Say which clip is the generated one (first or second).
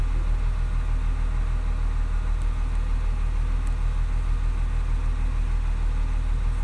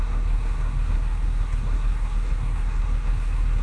second